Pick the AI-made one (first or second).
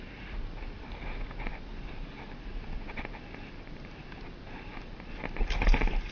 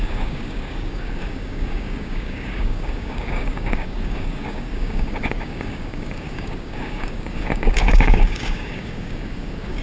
second